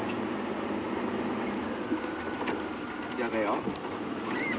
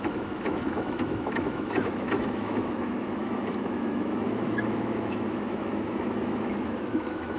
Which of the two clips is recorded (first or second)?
first